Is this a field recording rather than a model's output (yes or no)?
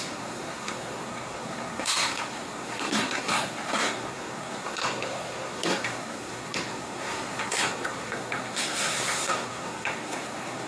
no